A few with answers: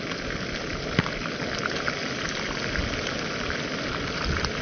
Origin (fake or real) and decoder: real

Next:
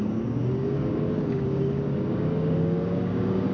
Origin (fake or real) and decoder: fake, codec, DAC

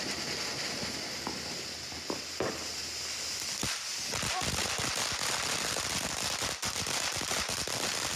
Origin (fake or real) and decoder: real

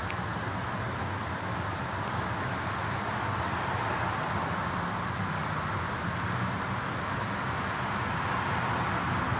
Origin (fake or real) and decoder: real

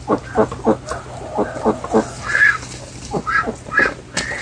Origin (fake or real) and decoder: real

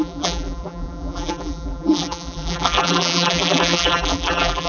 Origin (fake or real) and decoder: fake, vocoder, BigVGAN v2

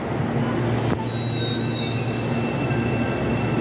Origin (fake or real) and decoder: real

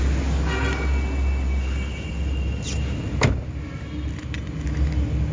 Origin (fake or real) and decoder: real